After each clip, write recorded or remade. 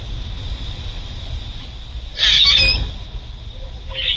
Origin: recorded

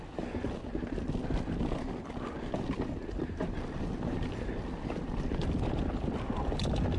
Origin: recorded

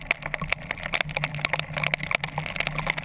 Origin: recorded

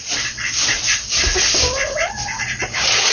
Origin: recorded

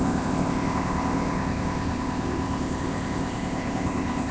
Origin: remade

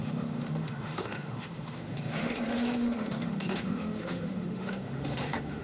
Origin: remade